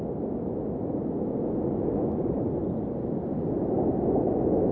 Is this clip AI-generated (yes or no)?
no